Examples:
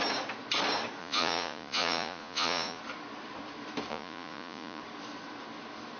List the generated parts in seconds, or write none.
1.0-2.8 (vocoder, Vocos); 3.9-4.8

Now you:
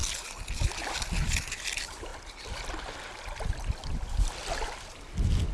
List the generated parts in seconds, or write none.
none

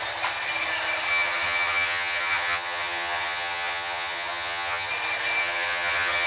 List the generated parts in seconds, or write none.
1.1-4.9 (vocoder, HiFi-GAN); 5.4-6.3

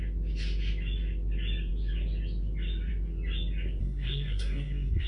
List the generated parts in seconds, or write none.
3.8-5.1 (codec, SNAC)

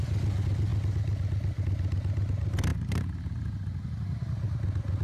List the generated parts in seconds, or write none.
2.7-3.4 (vocoder, BigVGAN v2)

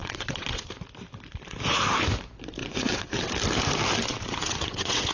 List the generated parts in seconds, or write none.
0.0-0.7 (vocoder, WaveNeXt); 2.6-3.3; 4.1-5.1

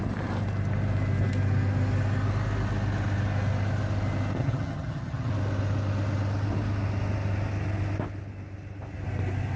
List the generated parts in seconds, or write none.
4.4-5.3 (vocoder, HiFi-GAN)